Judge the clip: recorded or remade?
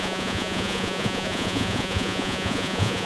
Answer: remade